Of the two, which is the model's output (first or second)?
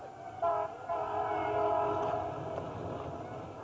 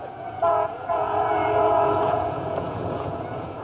second